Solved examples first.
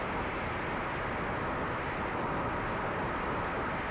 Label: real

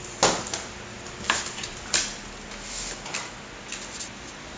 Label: real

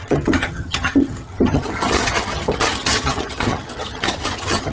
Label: fake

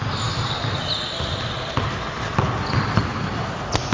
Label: real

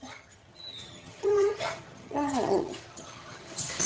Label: fake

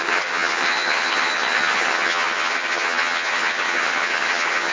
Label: fake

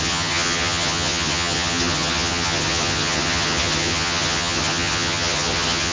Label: fake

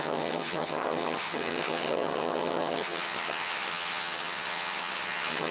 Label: fake